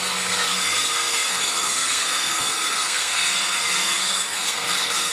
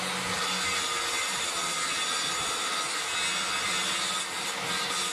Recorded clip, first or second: second